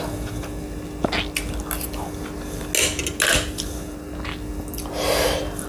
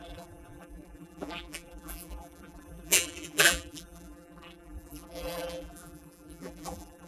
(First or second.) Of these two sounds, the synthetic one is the second